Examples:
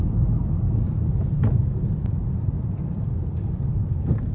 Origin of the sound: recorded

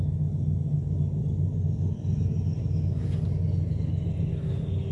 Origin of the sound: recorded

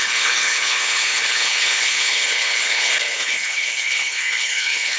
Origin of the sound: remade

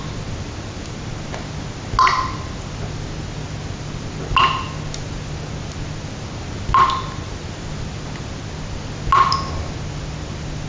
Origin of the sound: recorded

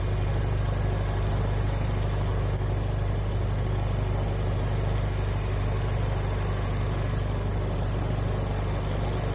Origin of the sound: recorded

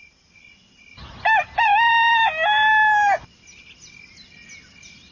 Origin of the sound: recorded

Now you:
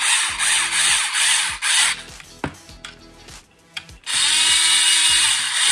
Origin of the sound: recorded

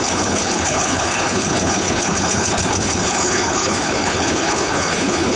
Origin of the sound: remade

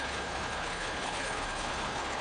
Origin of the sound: remade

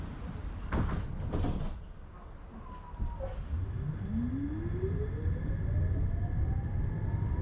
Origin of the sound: recorded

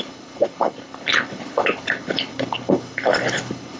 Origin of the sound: remade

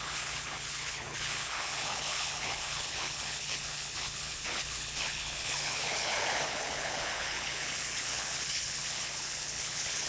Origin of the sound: remade